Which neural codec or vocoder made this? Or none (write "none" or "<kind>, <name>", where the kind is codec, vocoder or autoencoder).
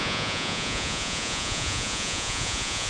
vocoder, Vocos